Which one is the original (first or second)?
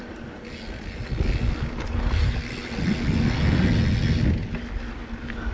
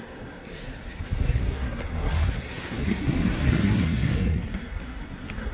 first